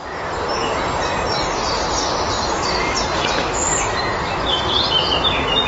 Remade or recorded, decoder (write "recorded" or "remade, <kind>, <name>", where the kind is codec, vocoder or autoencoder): recorded